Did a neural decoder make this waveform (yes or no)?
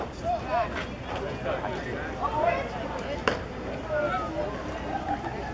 no